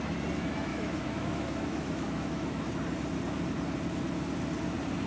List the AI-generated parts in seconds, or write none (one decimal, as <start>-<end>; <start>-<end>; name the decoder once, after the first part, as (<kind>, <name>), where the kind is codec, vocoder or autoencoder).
0.7-2.7 (autoencoder, DAC-VAE)